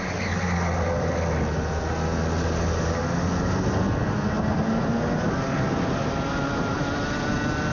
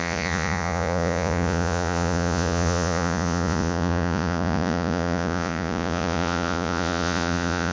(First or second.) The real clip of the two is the first